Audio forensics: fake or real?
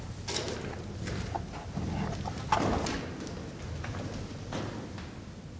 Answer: real